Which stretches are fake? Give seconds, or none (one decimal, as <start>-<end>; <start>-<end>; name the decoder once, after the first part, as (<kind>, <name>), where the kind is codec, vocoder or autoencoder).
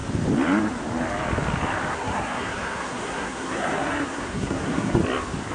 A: 1.9-5.0 (codec, SNAC)